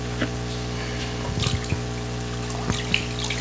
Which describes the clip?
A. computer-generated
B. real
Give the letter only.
B